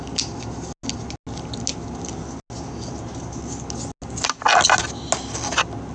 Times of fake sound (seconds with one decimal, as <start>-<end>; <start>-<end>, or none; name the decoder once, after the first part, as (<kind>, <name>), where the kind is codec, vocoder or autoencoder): none

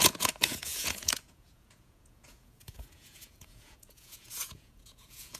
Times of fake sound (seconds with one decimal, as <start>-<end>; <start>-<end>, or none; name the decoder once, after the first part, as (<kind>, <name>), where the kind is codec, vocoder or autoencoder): 0.0-5.4 (vocoder, Vocos)

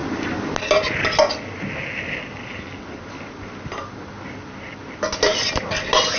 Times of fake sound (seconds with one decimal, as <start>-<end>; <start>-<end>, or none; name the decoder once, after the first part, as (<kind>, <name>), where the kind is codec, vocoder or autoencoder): none

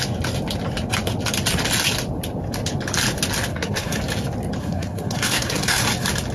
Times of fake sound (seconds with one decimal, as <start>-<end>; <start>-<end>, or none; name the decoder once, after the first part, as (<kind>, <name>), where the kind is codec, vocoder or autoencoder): 3.5-4.0 (codec, SNAC); 4.6-5.8